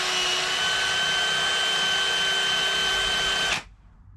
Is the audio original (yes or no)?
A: yes